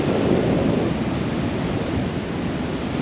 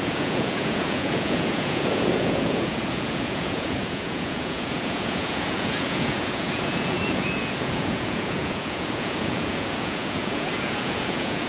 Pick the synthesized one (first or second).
second